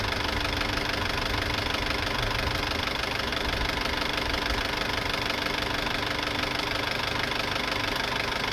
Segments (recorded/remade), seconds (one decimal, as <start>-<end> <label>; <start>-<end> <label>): 0.0-3.3 recorded; 3.3-4.6 remade; 4.6-8.5 recorded